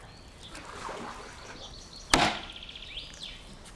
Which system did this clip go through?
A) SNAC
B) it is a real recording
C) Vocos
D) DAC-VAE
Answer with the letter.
B